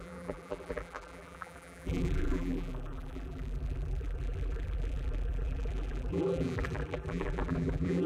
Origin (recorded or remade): remade